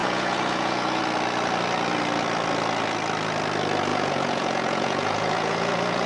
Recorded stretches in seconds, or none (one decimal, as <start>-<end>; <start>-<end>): 1.0-3.9